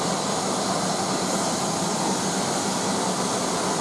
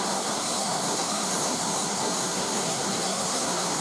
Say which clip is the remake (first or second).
second